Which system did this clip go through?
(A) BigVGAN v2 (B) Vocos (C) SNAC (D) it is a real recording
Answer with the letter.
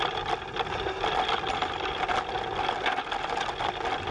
D